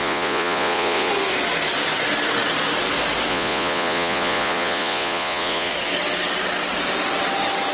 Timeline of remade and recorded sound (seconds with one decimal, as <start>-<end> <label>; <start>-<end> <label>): 0.0-1.1 remade; 1.1-3.3 recorded; 3.3-5.7 remade; 5.7-7.7 recorded